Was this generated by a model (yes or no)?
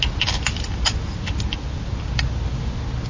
no